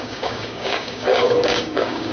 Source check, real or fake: fake